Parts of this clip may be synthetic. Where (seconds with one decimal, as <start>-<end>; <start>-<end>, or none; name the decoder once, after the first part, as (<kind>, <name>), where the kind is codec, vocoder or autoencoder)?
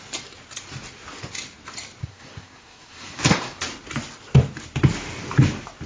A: 2.0-3.6 (codec, SNAC)